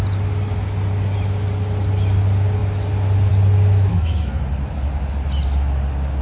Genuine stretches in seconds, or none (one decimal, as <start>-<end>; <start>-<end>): 0.0-3.9; 4.4-6.2